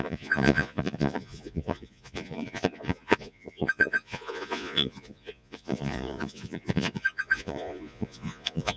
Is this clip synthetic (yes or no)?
yes